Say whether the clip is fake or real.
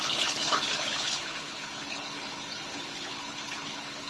fake